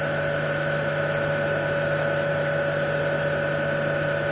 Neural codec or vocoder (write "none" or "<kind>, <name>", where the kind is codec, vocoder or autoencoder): none